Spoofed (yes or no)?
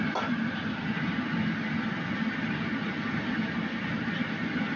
no